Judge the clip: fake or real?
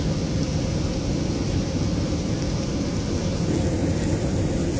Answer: real